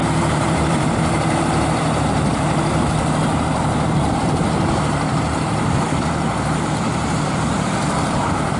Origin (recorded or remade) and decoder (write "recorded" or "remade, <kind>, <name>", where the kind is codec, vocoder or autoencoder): remade, vocoder, BigVGAN v2